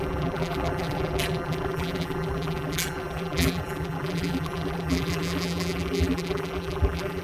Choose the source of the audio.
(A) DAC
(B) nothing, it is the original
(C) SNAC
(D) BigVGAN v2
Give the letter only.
D